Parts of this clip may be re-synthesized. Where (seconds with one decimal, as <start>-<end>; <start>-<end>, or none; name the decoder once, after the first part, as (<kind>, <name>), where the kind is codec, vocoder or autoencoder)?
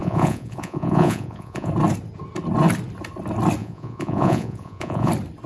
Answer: 0.0-1.7 (vocoder, Vocos); 3.6-5.1